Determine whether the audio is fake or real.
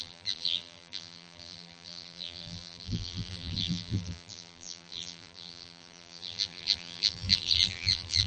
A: fake